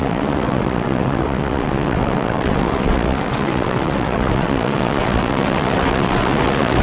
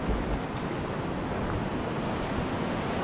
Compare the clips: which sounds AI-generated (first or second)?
first